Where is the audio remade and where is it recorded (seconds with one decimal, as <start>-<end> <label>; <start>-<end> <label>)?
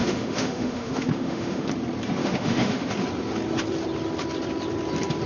0.0-1.7 remade; 1.7-2.2 recorded; 2.2-2.9 remade; 2.9-5.3 recorded